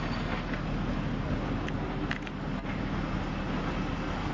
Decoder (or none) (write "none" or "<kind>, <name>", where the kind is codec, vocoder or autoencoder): none